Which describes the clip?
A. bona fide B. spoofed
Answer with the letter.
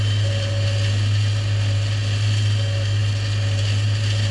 A